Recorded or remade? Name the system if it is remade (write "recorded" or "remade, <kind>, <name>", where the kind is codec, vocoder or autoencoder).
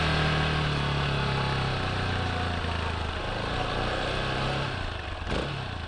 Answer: recorded